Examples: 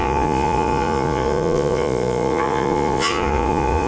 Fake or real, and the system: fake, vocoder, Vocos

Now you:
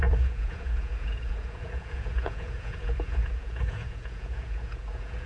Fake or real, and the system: fake, vocoder, Vocos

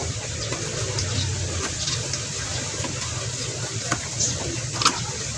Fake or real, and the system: real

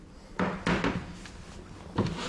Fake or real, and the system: real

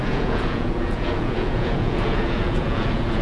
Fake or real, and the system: fake, vocoder, Vocos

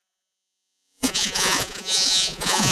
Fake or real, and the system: fake, vocoder, Vocos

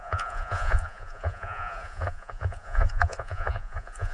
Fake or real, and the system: fake, vocoder, Vocos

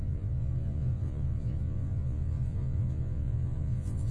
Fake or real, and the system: fake, vocoder, Vocos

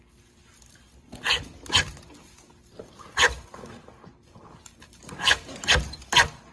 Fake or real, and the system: real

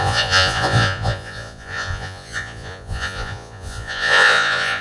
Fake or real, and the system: fake, vocoder, Vocos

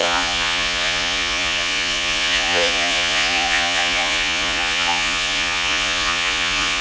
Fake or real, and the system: fake, vocoder, Vocos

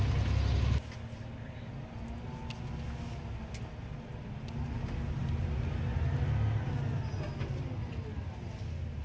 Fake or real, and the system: real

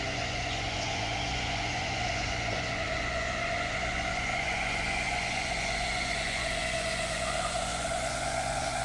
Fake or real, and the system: fake, vocoder, Vocos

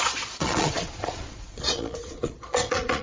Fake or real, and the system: fake, vocoder, Vocos